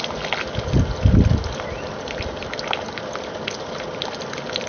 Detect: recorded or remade recorded